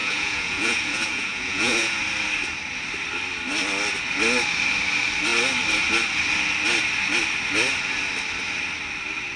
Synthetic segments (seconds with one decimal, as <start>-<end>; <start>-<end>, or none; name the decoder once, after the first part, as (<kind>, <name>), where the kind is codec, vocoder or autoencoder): 0.0-2.0 (vocoder, Vocos)